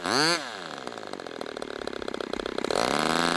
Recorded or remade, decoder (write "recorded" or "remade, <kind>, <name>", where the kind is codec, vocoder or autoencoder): recorded